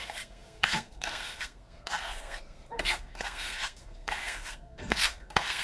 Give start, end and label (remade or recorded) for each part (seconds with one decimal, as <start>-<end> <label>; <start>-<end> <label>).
0.0-5.6 remade